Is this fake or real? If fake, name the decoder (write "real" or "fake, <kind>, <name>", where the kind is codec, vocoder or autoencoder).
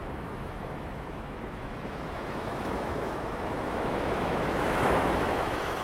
fake, autoencoder, DAC-VAE